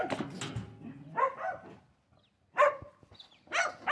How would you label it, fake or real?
real